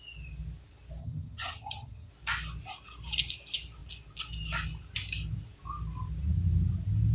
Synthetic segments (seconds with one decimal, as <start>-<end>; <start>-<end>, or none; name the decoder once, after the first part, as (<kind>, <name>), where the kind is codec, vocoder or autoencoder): 1.0-2.1 (vocoder, HiFi-GAN)